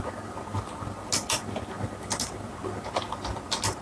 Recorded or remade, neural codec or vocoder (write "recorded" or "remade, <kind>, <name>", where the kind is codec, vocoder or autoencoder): recorded